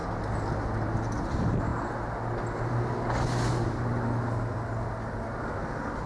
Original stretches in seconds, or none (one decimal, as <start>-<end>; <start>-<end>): 0.0-6.1